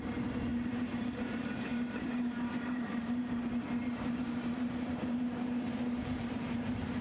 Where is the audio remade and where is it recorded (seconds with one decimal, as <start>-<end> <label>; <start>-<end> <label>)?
0.0-7.0 remade